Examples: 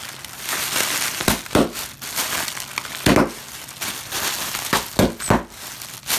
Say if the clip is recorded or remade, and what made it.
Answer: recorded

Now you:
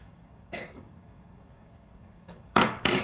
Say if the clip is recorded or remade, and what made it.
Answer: remade, codec, DAC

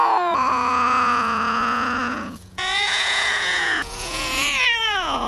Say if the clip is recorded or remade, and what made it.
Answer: remade, vocoder, Vocos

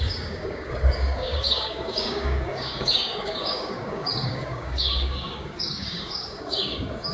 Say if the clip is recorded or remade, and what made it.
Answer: remade, codec, DAC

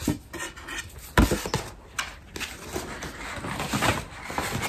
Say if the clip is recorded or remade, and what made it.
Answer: recorded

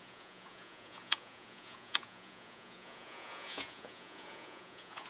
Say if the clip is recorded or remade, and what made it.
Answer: remade, vocoder, Vocos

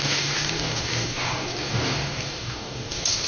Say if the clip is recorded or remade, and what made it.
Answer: remade, codec, DAC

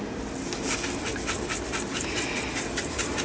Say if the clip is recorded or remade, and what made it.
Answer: recorded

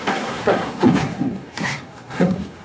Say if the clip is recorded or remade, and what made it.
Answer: remade, codec, SNAC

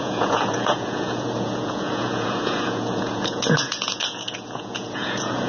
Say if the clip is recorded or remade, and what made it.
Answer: remade, vocoder, Vocos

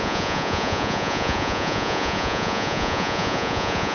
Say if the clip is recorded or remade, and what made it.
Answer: remade, vocoder, Vocos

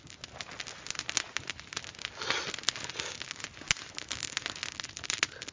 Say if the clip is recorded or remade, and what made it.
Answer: recorded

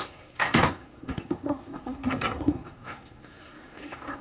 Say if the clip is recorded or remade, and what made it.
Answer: remade, codec, SNAC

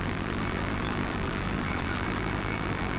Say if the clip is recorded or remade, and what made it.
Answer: remade, vocoder, BigVGAN v2